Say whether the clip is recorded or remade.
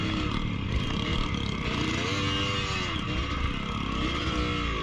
recorded